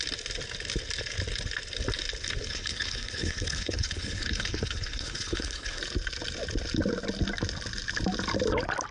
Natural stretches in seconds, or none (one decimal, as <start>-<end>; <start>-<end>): 0.0-2.5; 5.8-8.9